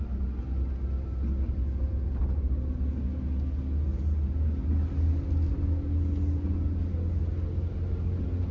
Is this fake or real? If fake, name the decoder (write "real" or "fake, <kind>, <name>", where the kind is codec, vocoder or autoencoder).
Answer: real